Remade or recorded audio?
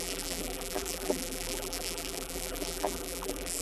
remade